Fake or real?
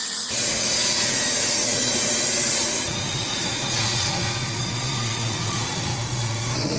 fake